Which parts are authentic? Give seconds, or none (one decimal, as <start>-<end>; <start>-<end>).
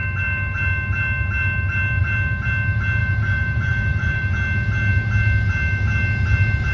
0.0-3.0; 4.3-6.7